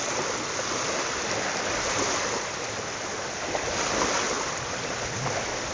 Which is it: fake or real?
real